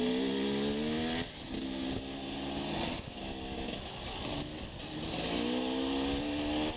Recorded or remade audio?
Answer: recorded